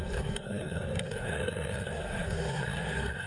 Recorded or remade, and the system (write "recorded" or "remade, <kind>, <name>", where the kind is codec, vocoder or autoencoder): remade, codec, SNAC